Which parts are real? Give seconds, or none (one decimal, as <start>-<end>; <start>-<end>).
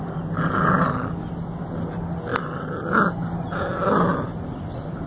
0.0-5.1